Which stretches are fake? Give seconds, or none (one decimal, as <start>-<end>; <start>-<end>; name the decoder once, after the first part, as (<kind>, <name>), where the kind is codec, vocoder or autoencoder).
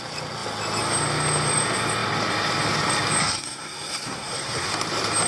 3.2-4.7 (codec, SNAC)